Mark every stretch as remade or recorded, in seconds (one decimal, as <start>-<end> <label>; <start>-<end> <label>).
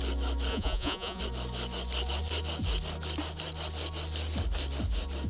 0.0-0.5 recorded; 0.5-1.2 remade; 1.2-5.3 recorded